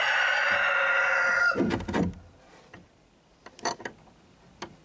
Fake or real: real